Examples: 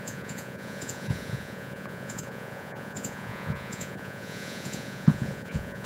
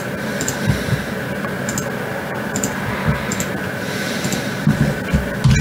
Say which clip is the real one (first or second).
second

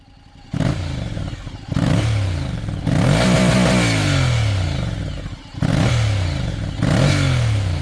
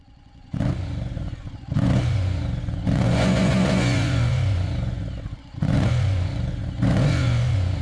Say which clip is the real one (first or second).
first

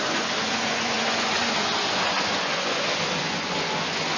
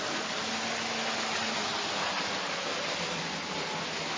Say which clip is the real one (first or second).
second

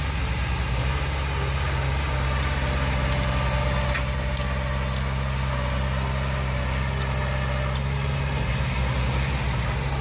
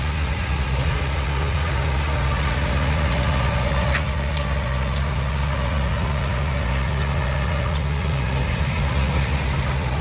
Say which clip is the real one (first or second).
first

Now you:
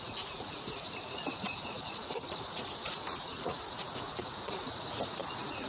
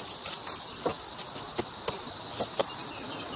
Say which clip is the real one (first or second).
second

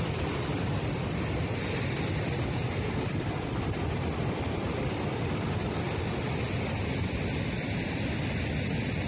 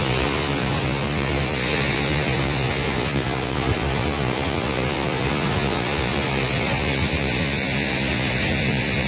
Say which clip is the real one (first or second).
first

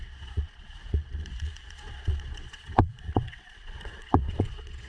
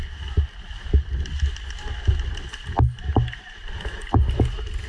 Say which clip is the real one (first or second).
second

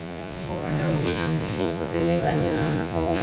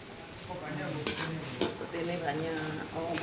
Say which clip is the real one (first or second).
second